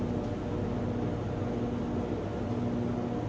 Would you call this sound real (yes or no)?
yes